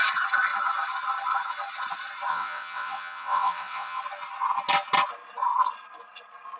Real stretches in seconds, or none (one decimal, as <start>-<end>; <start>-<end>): 0.0-2.3; 4.0-6.6